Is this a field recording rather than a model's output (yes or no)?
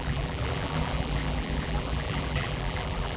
no